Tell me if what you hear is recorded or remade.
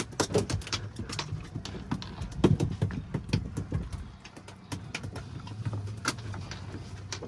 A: recorded